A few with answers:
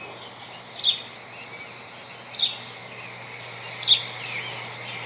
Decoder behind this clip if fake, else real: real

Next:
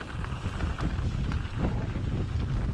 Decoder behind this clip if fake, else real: real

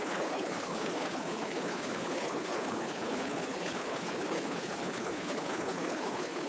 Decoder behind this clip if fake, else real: fake, codec, HILCodec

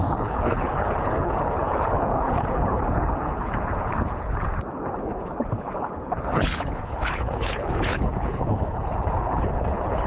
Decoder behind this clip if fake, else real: fake, codec, HILCodec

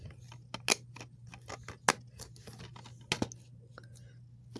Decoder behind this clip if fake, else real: real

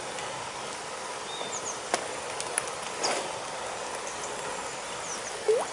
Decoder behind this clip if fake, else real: real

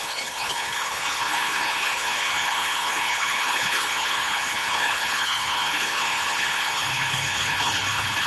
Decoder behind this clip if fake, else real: fake, codec, HILCodec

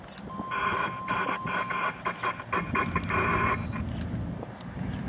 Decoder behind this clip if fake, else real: real